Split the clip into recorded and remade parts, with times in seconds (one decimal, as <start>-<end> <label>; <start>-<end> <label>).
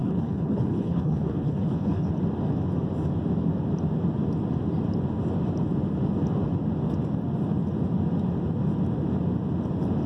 0.0-2.1 remade; 2.1-10.1 recorded